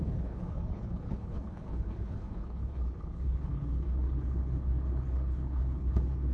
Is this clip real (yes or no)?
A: no